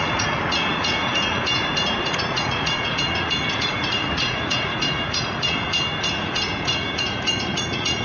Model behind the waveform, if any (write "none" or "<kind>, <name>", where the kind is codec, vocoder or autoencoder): vocoder, Vocos